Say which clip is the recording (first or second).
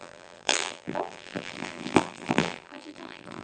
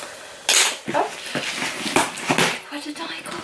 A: second